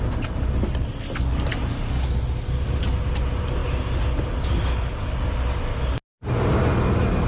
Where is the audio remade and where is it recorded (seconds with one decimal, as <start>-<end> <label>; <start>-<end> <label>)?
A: 0.0-7.3 recorded